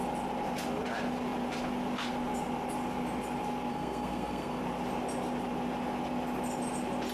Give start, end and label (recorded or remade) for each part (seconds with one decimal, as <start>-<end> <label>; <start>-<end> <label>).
0.0-3.7 recorded; 3.7-4.6 remade; 4.6-7.1 recorded